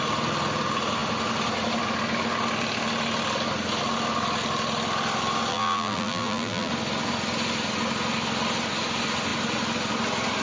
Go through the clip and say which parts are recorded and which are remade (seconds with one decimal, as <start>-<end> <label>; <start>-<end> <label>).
0.0-5.5 recorded; 5.5-6.7 remade; 6.7-10.4 recorded